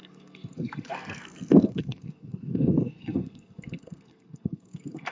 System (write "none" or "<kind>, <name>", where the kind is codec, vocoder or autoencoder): codec, SNAC